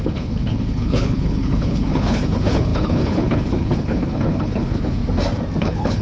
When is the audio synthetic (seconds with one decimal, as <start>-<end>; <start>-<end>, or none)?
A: 0.0-5.0; 5.6-6.0